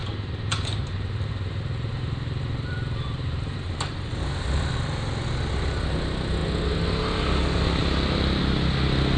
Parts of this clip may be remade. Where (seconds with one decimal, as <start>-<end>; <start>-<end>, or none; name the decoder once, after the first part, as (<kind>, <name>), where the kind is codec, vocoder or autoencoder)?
0.0-4.7 (vocoder, BigVGAN v2)